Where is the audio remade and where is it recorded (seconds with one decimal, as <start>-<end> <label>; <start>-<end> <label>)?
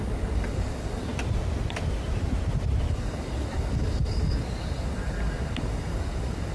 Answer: 0.0-1.1 remade; 1.1-2.9 recorded; 2.9-6.5 remade